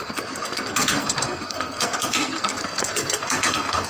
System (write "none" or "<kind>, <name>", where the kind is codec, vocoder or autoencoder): codec, SNAC